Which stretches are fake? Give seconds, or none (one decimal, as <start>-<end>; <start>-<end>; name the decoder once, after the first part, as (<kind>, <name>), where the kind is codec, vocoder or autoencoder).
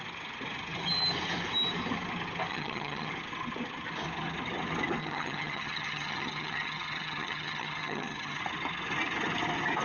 2.5-3.1 (vocoder, HiFi-GAN); 5.0-8.4